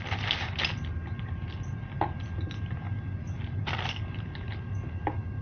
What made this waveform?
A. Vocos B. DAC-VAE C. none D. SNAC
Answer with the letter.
C